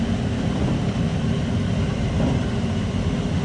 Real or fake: real